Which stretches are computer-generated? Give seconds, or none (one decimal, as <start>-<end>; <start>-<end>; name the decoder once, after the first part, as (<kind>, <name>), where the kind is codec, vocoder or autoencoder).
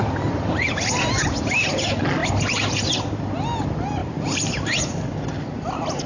4.0-5.1 (vocoder, BigVGAN v2)